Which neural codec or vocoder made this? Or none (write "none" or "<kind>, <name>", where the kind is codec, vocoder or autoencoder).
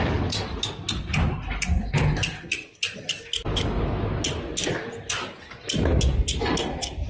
none